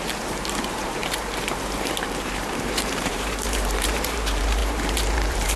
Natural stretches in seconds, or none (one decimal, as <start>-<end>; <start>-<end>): none